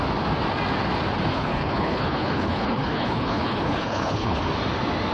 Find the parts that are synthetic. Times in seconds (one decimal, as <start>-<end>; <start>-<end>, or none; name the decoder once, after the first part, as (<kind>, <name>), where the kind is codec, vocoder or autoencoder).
1.3-4.4 (codec, HILCodec)